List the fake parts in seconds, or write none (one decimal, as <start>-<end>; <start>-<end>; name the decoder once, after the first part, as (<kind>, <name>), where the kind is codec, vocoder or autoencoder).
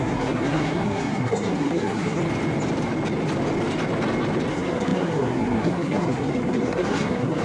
0.0-2.2 (codec, SNAC); 4.5-7.4